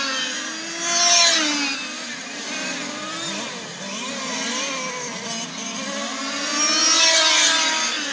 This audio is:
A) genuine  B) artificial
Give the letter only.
A